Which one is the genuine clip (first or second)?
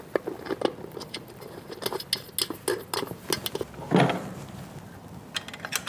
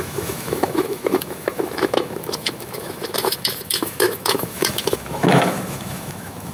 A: first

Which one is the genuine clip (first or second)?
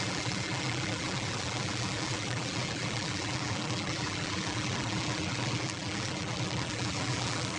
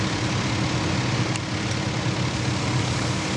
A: second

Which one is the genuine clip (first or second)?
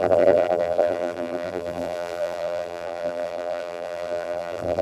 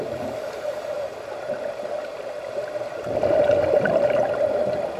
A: second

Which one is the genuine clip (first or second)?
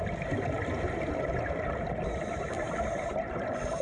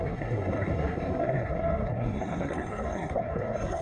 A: first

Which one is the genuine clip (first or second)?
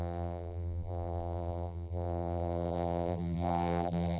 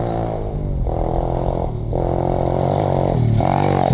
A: second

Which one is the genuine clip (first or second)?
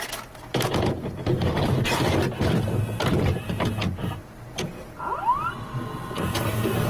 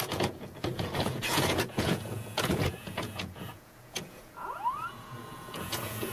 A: first